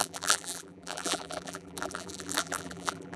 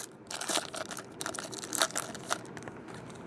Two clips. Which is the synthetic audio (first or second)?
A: first